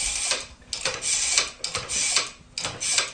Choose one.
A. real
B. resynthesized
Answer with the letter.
A